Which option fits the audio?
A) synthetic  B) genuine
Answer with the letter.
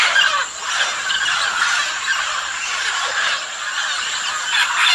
B